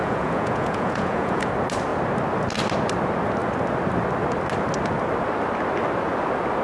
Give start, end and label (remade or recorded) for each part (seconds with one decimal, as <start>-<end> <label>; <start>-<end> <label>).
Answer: 0.0-1.5 remade; 1.5-6.6 recorded